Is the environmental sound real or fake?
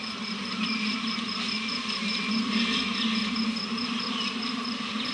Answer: fake